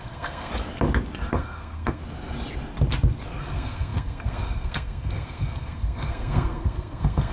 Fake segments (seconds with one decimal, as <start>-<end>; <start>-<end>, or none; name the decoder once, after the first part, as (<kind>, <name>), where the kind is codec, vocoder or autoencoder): 0.0-0.5 (codec, SNAC); 1.3-2.0; 3.4-7.3